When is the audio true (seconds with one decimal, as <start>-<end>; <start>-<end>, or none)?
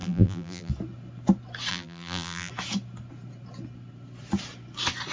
0.7-1.7; 2.5-5.1